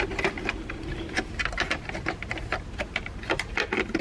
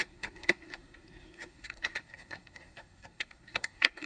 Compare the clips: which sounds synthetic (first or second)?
second